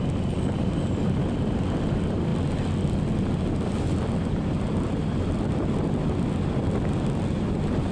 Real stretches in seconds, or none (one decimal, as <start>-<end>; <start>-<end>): 0.0-7.9

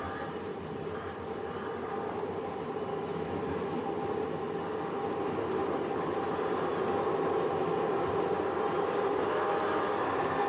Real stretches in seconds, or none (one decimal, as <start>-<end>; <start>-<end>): 0.0-2.9; 3.8-10.5

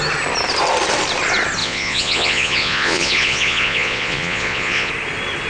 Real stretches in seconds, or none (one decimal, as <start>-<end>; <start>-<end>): 0.0-1.6; 4.9-5.5

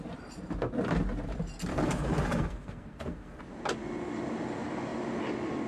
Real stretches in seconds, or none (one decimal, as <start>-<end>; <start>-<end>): 0.0-1.7; 3.4-5.7

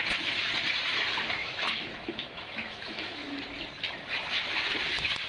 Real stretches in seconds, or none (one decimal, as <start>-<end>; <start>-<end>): 0.0-1.4; 3.3-5.3